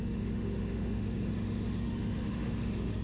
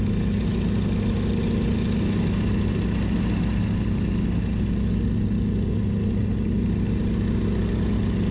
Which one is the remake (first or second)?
first